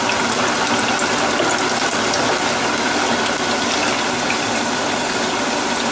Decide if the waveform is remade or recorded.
recorded